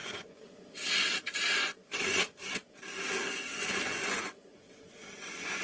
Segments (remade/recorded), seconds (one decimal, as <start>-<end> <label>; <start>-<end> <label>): 0.0-0.6 remade; 0.6-1.6 recorded; 1.6-2.4 remade; 2.4-3.5 recorded; 3.5-5.6 remade